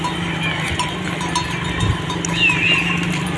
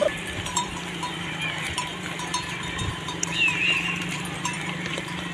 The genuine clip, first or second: first